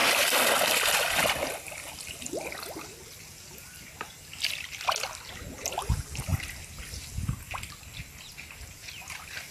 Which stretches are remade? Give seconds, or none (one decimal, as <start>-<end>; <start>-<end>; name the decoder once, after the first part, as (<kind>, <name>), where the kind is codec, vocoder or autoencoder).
none